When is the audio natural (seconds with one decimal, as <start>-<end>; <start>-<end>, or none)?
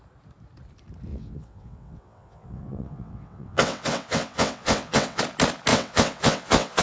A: 0.0-1.1; 5.2-5.7